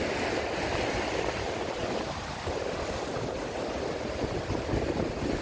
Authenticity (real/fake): real